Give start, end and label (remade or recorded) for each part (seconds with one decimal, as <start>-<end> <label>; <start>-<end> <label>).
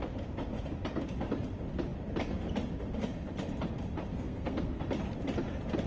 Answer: 0.0-4.1 recorded; 4.1-4.8 remade; 4.8-5.9 recorded